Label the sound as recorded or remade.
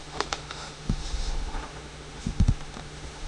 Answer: remade